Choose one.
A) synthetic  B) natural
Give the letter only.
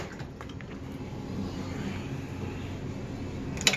B